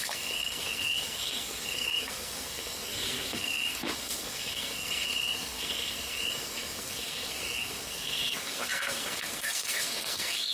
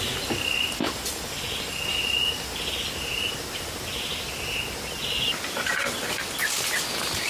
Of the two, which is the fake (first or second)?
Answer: first